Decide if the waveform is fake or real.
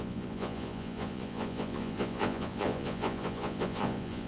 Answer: fake